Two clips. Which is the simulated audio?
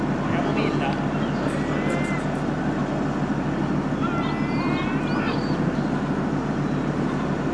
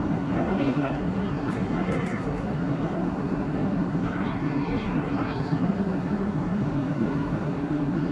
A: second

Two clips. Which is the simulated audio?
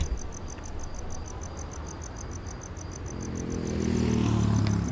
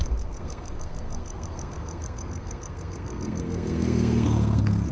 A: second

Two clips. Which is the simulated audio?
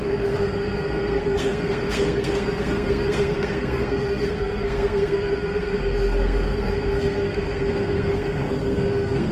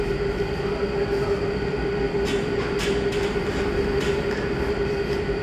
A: first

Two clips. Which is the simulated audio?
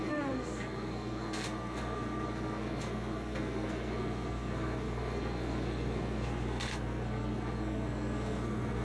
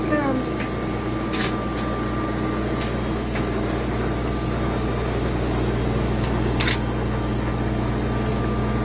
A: first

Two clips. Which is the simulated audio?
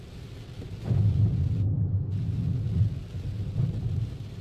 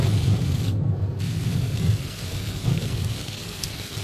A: second